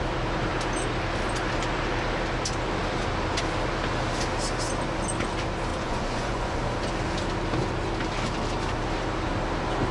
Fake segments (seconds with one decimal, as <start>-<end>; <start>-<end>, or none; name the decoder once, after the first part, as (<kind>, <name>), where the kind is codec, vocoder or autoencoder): 5.7-6.6 (vocoder, Vocos)

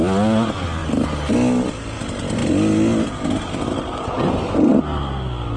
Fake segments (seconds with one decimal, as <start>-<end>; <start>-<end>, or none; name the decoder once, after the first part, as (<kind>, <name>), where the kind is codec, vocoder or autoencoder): none

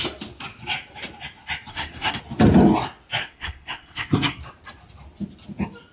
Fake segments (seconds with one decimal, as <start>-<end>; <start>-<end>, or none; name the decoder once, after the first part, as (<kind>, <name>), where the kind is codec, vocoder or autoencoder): 1.7-2.2 (codec, SNAC); 3.2-4.4

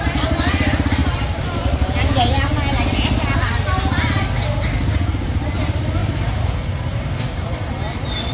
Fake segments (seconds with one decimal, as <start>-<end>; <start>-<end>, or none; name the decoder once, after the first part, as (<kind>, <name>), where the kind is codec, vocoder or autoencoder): none

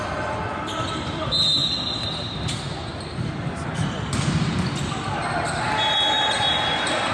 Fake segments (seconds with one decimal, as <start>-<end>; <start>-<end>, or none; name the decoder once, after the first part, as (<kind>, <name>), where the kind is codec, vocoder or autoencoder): none

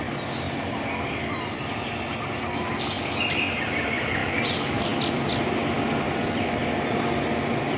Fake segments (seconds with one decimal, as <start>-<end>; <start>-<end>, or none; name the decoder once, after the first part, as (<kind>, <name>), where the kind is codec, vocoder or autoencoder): none

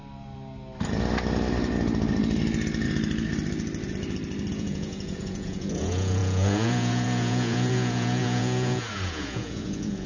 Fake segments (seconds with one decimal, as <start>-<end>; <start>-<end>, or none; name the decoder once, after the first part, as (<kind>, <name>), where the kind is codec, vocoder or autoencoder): 4.5-10.1 (vocoder, Vocos)

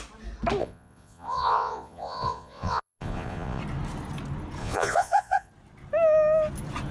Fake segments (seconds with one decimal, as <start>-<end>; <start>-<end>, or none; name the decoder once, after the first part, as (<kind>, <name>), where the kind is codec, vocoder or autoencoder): 0.6-3.6 (vocoder, Vocos); 4.6-5.5